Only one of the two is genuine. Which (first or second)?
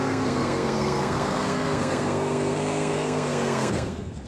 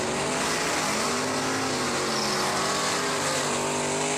second